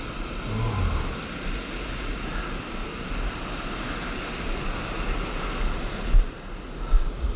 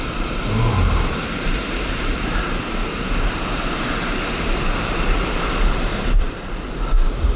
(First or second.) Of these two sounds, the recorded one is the first